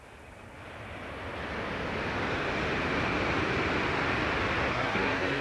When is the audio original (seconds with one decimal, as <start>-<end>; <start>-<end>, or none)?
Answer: 0.0-4.7